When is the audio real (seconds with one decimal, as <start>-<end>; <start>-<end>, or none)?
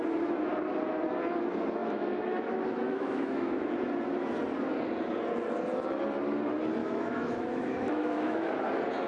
0.0-1.8; 3.7-6.8; 8.5-9.1